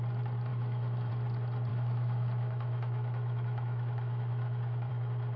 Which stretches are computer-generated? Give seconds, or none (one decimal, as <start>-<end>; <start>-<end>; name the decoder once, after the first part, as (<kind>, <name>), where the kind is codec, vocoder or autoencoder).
0.5-1.1 (autoencoder, DAC-VAE); 1.7-4.9